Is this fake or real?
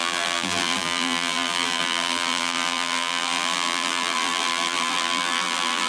fake